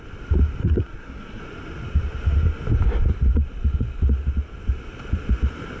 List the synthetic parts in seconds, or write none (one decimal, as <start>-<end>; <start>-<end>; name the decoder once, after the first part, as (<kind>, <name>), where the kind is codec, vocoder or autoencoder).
0.6-1.4 (codec, SNAC)

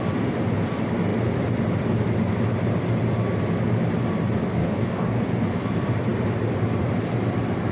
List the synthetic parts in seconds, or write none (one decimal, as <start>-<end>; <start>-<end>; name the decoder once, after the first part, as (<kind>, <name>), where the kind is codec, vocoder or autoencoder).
4.6-5.2 (codec, DAC)

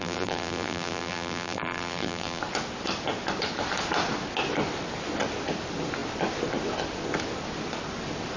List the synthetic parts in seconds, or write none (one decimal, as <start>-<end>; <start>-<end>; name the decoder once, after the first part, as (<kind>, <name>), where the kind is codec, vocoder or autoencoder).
0.0-2.4 (vocoder, BigVGAN v2)

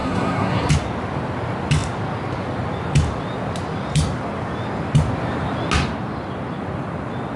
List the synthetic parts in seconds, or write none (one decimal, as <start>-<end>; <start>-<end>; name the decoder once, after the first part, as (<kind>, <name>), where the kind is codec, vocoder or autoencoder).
0.0-0.7 (codec, SNAC)